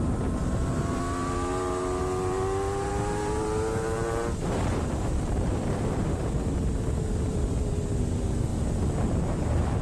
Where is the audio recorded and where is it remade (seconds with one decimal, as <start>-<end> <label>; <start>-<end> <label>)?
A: 0.0-8.5 remade; 8.5-9.3 recorded; 9.3-9.8 remade